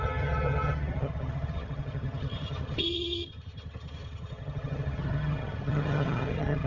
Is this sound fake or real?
fake